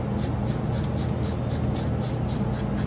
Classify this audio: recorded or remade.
recorded